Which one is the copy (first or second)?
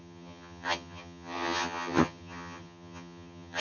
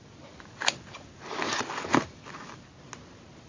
first